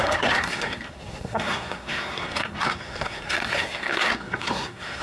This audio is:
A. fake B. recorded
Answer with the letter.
A